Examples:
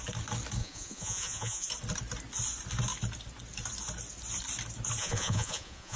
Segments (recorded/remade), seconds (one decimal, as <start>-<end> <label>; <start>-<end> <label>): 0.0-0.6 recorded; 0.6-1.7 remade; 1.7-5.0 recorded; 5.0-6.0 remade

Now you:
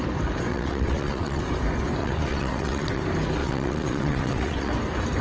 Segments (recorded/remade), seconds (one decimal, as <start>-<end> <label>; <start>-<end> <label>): 0.0-0.5 recorded; 0.5-1.4 remade; 1.4-2.0 recorded; 2.0-3.0 remade; 3.0-3.4 recorded; 3.4-4.7 remade; 4.7-5.2 recorded

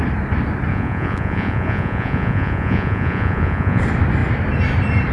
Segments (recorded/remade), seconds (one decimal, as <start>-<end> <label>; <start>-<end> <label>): 0.0-0.7 recorded; 0.7-3.8 remade; 3.8-5.1 recorded